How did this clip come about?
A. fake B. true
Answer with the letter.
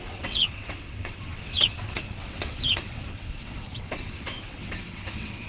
A